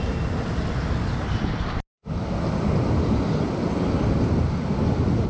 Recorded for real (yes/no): yes